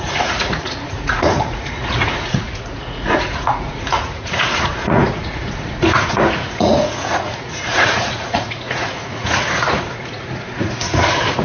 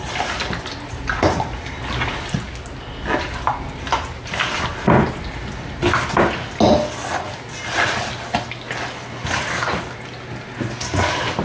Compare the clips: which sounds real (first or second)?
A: second